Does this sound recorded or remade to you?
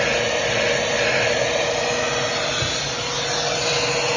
recorded